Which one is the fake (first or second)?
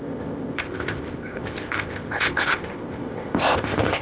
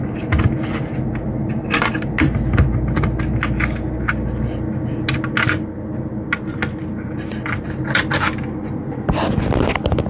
first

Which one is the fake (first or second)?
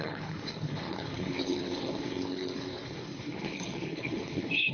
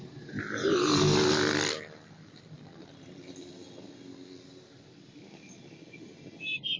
first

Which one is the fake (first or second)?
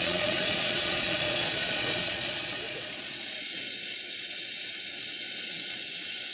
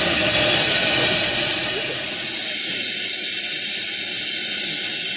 first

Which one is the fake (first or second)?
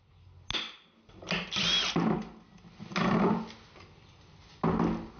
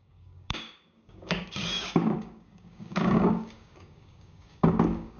second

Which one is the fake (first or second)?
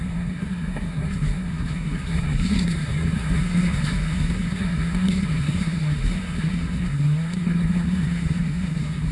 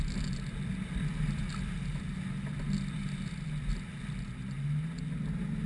first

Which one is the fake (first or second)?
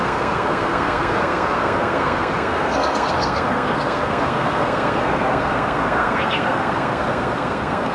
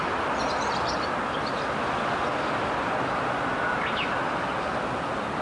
first